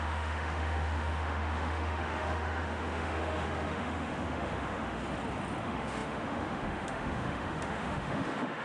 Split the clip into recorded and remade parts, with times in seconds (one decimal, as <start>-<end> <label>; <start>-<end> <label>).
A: 0.0-5.0 remade; 5.0-5.6 recorded; 5.6-8.6 remade